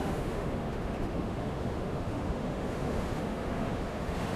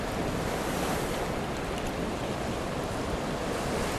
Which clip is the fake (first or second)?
first